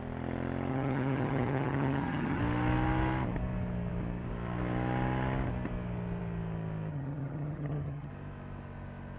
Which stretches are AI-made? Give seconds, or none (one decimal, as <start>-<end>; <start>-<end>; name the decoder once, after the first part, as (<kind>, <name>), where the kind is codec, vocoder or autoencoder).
0.7-2.4 (vocoder, HiFi-GAN); 6.9-8.1